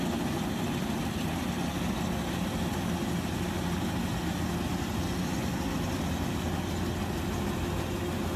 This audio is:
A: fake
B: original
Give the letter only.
B